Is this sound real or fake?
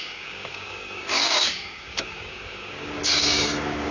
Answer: fake